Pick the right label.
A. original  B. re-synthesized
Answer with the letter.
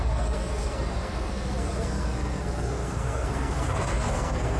B